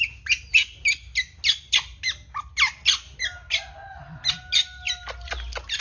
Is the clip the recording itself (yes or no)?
yes